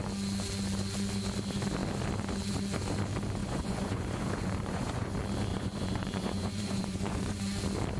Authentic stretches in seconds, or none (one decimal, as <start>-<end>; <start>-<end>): 0.0-3.4; 5.1-5.5; 7.4-8.0